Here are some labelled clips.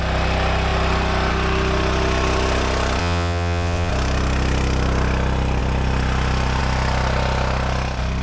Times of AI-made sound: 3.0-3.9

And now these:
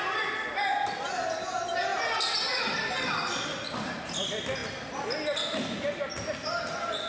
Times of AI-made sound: none

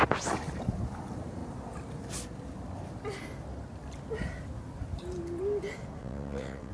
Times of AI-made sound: 6.0-6.7

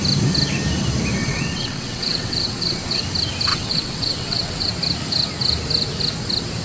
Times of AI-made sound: 1.2-3.0; 3.5-4.7

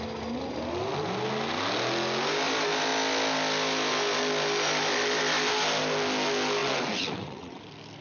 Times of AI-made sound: 6.6-7.6

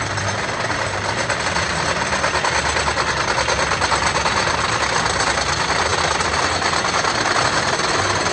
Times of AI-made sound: none

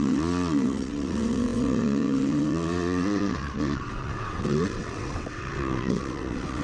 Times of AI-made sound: 0.0-6.6